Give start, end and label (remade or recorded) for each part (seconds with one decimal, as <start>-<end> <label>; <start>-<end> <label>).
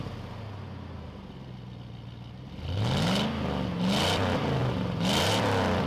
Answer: 0.0-5.9 recorded